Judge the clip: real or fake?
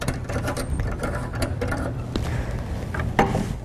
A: fake